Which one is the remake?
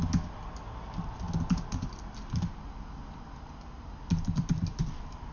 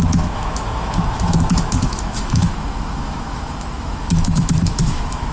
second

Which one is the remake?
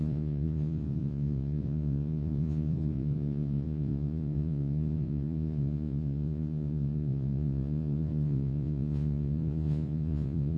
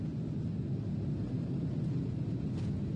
first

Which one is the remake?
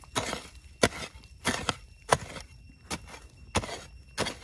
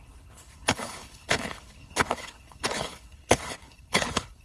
second